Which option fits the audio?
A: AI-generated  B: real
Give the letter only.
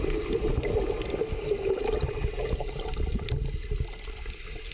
B